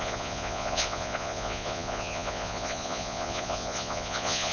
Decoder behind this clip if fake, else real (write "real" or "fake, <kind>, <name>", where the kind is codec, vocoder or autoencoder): fake, vocoder, Vocos